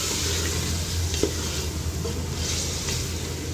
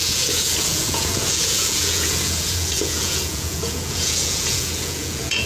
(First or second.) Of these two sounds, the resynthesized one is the second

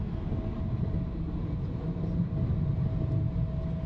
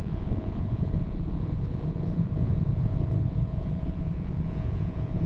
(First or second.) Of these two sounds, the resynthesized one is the second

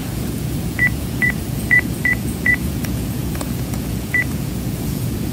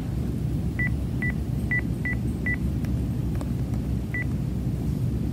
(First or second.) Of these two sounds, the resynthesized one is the first